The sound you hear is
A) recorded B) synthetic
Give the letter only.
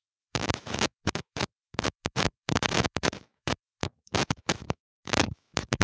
B